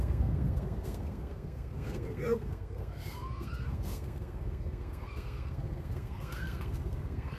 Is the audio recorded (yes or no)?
no